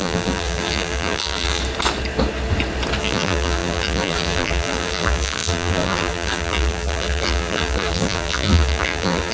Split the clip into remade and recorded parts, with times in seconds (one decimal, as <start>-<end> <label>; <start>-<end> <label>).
0.0-1.6 remade; 1.6-3.0 recorded; 3.0-9.3 remade